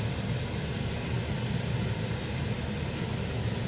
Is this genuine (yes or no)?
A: yes